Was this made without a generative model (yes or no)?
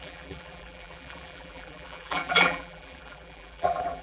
no